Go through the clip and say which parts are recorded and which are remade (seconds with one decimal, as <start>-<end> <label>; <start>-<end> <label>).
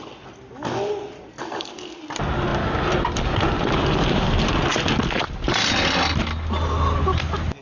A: 0.0-1.4 recorded; 1.4-2.0 remade; 2.0-7.6 recorded